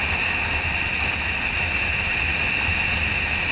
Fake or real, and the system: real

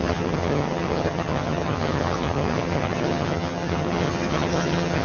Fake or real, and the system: fake, vocoder, HiFi-GAN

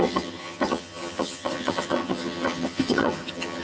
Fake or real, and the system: fake, vocoder, HiFi-GAN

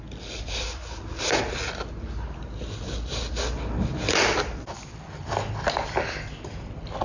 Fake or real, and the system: real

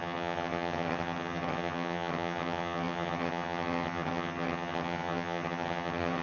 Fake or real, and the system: fake, vocoder, HiFi-GAN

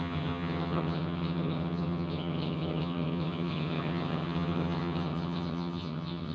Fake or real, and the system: fake, vocoder, HiFi-GAN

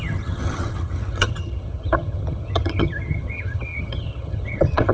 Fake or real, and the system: fake, vocoder, HiFi-GAN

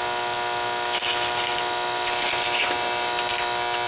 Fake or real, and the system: real